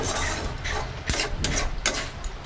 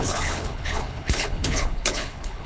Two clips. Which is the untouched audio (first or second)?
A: first